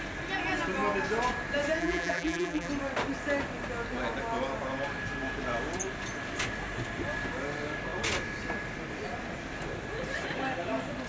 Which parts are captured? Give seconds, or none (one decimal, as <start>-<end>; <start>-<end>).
0.0-1.8; 2.7-11.1